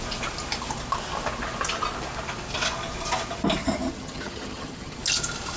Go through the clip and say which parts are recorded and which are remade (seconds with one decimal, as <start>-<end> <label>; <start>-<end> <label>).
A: 0.0-3.6 recorded; 3.6-5.0 remade; 5.0-5.6 recorded